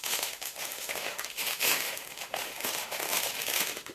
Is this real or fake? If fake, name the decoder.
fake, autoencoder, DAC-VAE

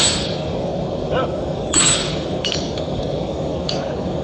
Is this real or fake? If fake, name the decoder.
fake, codec, DAC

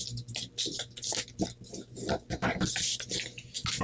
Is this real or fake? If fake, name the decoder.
real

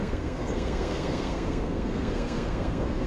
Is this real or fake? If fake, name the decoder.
fake, codec, SNAC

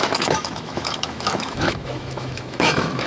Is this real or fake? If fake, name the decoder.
fake, autoencoder, DAC-VAE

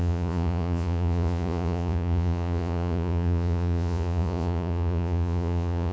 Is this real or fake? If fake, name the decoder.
fake, vocoder, Vocos